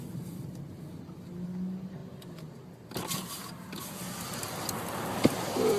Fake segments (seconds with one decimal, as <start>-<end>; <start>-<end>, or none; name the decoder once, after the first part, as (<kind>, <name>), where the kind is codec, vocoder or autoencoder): none